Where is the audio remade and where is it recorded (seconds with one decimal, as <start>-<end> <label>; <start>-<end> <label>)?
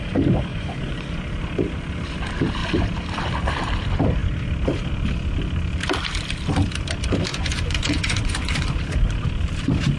0.0-0.5 recorded; 0.5-1.2 remade; 1.2-7.3 recorded; 7.3-8.5 remade; 8.5-10.0 recorded